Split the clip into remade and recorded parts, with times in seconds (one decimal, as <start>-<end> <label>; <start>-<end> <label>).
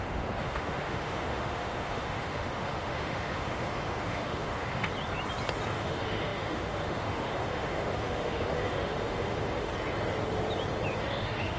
0.0-4.9 remade; 4.9-5.7 recorded; 5.7-9.7 remade; 9.7-11.0 recorded; 11.0-11.6 remade